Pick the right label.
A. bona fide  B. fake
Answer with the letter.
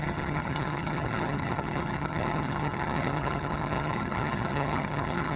B